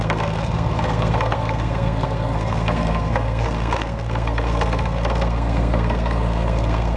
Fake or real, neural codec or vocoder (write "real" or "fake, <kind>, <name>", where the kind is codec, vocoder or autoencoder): fake, codec, SNAC